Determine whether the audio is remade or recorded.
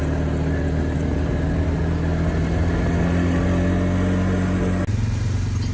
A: recorded